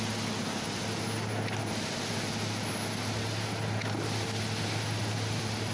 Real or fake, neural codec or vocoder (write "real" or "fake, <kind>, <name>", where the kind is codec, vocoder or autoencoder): real